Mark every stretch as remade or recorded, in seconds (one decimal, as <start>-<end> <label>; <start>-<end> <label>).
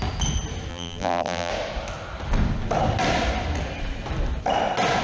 0.0-0.7 recorded; 0.7-1.5 remade; 1.5-5.0 recorded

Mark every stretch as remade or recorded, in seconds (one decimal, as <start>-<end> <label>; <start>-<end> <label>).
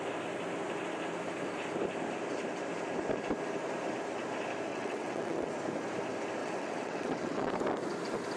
0.0-4.7 recorded; 4.7-5.5 remade; 5.5-6.4 recorded; 6.4-7.5 remade; 7.5-8.4 recorded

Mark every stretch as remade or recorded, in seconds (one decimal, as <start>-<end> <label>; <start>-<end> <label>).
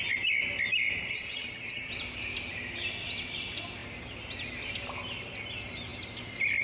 0.0-1.1 recorded; 1.1-1.9 remade; 1.9-6.6 recorded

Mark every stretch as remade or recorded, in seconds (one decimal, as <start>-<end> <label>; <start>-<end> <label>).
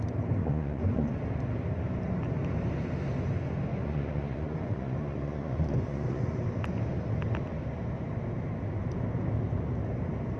0.0-0.4 recorded; 0.4-1.2 remade; 1.2-3.7 recorded; 3.7-6.4 remade; 6.4-10.4 recorded